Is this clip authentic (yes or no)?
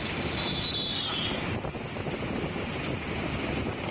no